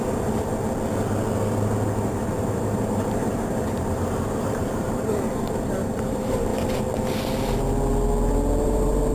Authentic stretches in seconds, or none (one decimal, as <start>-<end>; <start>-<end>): 0.5-2.0; 6.5-8.6